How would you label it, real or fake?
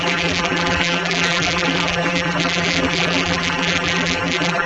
fake